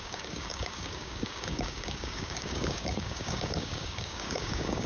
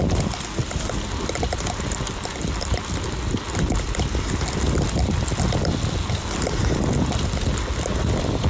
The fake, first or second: first